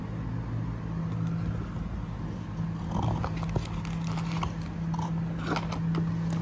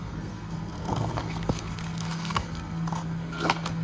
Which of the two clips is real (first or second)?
first